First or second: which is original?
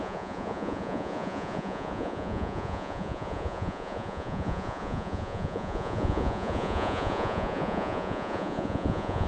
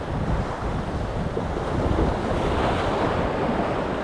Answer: second